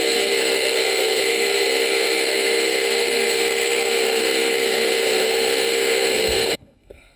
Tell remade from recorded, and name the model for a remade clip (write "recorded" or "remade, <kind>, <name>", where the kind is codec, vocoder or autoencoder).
remade, codec, SNAC